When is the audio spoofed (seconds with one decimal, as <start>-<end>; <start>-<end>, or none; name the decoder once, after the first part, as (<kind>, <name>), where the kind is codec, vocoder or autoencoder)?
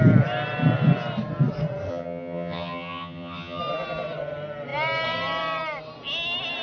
1.9-3.6 (vocoder, HiFi-GAN)